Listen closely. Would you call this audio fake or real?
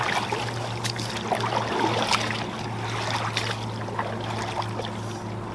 real